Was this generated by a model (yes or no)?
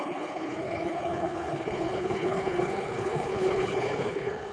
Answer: yes